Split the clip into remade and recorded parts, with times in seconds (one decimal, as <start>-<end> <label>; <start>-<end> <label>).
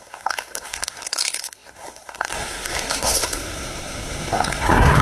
0.0-5.0 remade